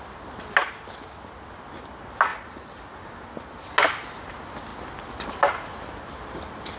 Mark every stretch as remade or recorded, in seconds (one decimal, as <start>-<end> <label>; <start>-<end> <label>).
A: 0.0-6.8 recorded